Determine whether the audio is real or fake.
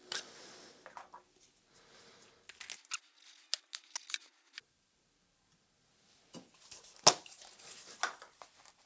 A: real